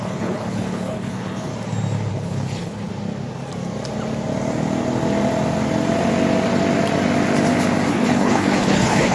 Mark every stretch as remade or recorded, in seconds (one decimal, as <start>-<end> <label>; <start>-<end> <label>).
0.0-1.5 remade; 1.5-2.1 recorded; 2.1-2.9 remade; 2.9-7.9 recorded; 7.9-9.1 remade